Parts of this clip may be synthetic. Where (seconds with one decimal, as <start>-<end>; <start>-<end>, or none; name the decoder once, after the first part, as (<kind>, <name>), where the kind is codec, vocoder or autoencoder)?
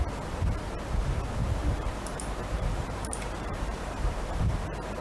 1.4-4.4 (vocoder, BigVGAN v2)